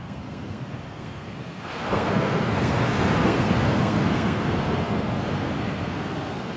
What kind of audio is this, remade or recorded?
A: remade